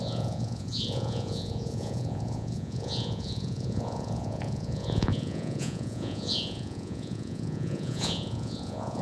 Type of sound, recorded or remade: remade